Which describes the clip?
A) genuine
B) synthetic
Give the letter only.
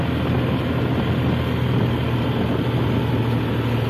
A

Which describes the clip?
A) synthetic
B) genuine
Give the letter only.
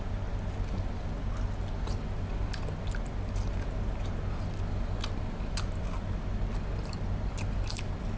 B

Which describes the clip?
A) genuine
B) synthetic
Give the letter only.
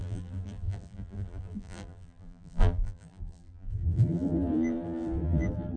B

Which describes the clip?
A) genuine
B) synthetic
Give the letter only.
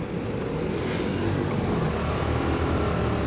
A